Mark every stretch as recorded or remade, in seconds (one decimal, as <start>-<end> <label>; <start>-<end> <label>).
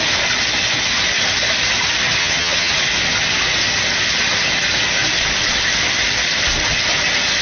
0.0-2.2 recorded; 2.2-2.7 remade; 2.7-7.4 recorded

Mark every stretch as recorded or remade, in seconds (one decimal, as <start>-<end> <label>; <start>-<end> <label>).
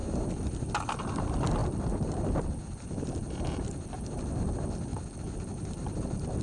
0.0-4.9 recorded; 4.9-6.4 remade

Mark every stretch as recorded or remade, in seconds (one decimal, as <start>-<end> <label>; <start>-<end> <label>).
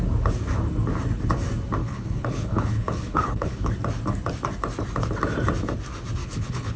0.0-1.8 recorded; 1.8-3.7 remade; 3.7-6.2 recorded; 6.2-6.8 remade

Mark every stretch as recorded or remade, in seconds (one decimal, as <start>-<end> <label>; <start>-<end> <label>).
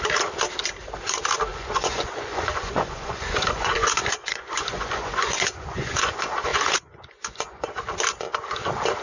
0.0-1.5 recorded; 1.5-6.1 remade; 6.1-6.5 recorded; 6.5-7.7 remade; 7.7-9.0 recorded